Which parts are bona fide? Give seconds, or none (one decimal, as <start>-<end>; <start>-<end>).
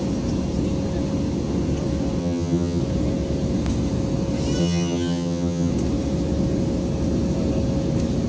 0.0-2.2; 2.8-4.6; 5.7-8.3